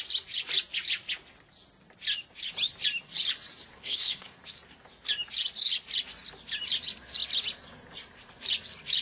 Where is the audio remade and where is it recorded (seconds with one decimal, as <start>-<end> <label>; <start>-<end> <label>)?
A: 0.0-3.7 recorded; 3.7-4.4 remade; 4.4-9.0 recorded